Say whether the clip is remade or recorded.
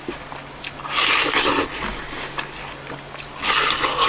recorded